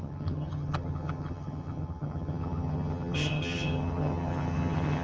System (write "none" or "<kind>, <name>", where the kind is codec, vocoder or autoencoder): vocoder, HiFi-GAN